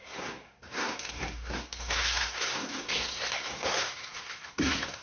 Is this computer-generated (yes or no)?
yes